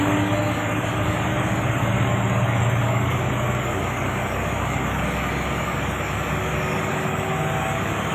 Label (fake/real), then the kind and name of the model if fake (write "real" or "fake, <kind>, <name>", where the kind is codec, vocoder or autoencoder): fake, codec, DAC